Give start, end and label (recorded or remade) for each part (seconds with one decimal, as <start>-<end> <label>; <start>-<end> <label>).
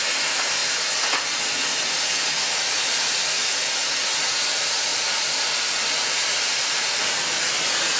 0.0-4.9 recorded; 4.9-7.1 remade; 7.1-8.0 recorded